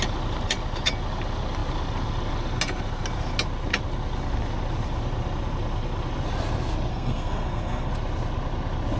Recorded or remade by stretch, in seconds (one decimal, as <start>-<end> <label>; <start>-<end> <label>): 0.0-6.9 recorded; 6.9-7.9 remade; 7.9-9.0 recorded